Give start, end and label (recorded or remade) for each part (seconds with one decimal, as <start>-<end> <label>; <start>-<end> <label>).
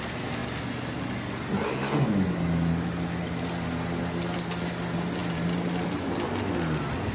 0.0-7.1 recorded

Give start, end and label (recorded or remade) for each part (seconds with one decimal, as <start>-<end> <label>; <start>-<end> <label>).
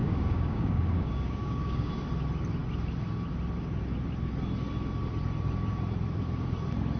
0.0-1.9 remade; 1.9-7.0 recorded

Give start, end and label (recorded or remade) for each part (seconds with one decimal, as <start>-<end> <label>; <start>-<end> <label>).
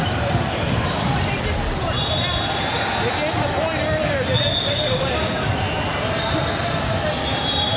0.0-4.7 recorded; 4.7-5.5 remade; 5.5-7.8 recorded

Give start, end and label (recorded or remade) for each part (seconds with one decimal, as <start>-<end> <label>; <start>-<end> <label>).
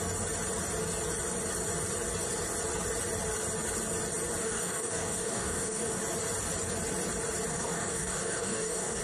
0.0-4.4 recorded; 4.4-6.0 remade; 6.0-7.5 recorded; 7.5-9.0 remade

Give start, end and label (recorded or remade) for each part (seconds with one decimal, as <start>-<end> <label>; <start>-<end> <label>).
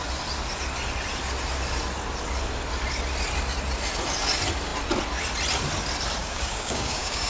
0.0-6.2 recorded; 6.2-7.3 remade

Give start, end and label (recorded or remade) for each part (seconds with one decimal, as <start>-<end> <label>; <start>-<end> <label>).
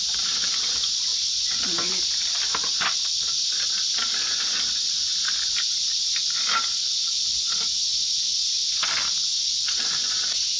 0.0-10.6 recorded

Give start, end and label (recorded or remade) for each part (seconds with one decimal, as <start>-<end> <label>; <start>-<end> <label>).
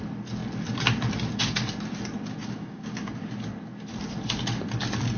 0.0-2.4 recorded; 2.4-3.1 remade; 3.1-5.2 recorded